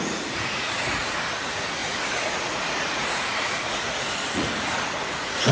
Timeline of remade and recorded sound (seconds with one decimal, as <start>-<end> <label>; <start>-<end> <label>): 0.0-5.5 remade